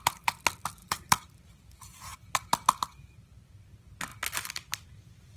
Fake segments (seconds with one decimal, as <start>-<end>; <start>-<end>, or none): 0.8-1.5